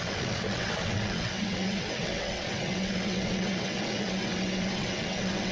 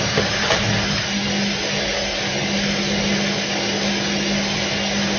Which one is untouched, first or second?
second